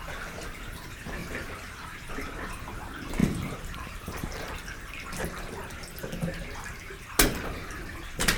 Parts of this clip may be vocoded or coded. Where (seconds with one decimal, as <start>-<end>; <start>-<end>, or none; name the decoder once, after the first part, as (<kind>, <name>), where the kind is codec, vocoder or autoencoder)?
1.2-2.1 (vocoder, BigVGAN v2); 3.2-4.5